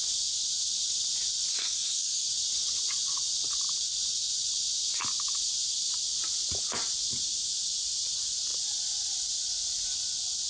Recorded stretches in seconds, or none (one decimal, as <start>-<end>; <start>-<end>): 0.0-1.5; 2.3-10.5